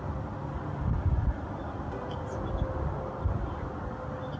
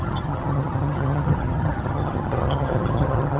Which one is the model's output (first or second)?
second